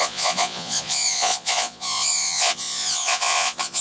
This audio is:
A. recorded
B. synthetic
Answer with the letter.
B